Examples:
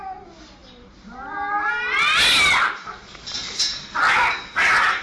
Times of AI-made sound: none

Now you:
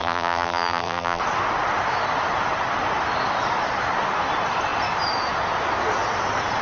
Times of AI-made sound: 0.0-1.2 (vocoder, BigVGAN v2)

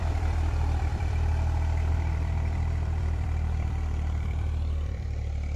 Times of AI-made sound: 0.0-1.3 (vocoder, BigVGAN v2); 1.9-5.6

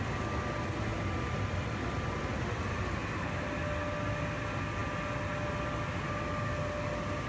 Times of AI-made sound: 0.9-2.4 (vocoder, BigVGAN v2); 3.0-3.6

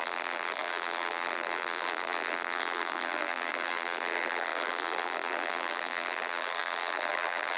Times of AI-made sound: 0.0-7.6 (vocoder, BigVGAN v2)